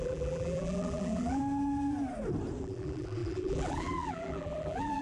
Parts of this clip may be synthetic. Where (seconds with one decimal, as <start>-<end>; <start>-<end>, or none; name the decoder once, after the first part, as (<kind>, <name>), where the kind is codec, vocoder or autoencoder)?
0.0-1.4 (vocoder, BigVGAN v2); 2.6-5.0